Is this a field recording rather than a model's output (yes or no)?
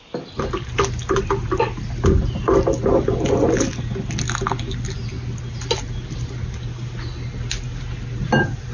yes